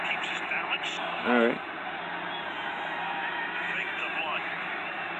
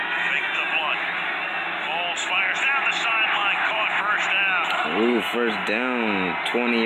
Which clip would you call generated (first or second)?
first